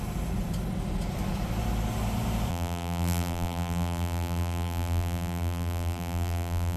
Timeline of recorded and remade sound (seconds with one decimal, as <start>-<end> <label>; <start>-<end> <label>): 0.0-2.5 recorded; 2.5-6.8 remade